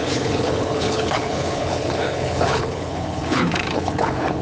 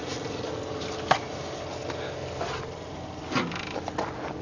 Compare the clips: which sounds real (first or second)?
second